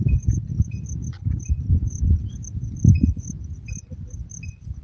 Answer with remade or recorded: recorded